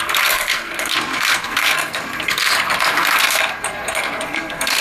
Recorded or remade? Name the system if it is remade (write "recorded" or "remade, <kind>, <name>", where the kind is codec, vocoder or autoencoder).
remade, codec, SNAC